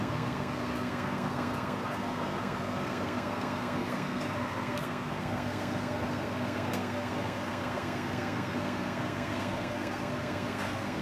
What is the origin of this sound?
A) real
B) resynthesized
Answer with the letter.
B